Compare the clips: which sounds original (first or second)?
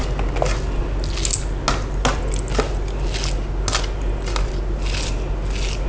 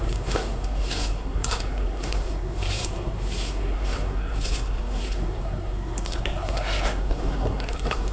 first